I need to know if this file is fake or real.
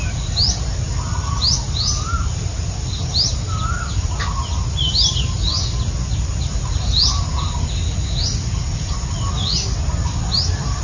real